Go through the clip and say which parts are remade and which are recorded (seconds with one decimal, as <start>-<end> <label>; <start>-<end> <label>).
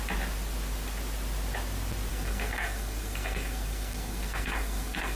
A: 0.0-2.1 recorded; 2.1-5.2 remade